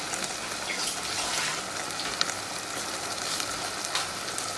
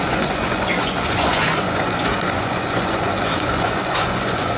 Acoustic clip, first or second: first